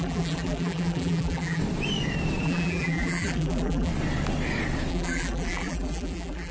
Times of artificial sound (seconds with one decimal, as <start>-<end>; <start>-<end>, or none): 0.0-1.6; 2.4-3.9; 4.9-6.5